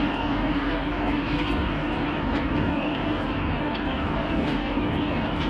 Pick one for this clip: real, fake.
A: fake